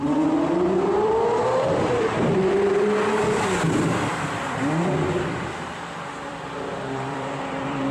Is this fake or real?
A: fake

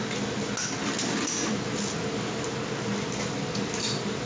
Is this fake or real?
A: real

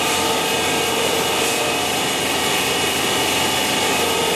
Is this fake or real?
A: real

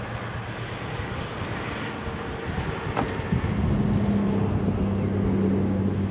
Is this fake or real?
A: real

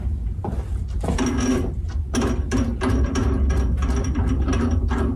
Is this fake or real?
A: real